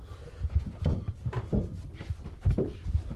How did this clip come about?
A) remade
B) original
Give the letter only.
B